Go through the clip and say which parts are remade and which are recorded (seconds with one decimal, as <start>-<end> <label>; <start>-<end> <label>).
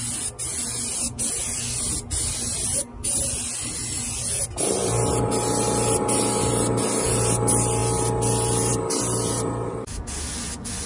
0.0-10.9 recorded